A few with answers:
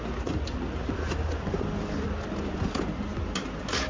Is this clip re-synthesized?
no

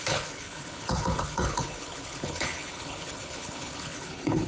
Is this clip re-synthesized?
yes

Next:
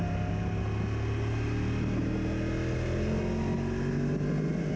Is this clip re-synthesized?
no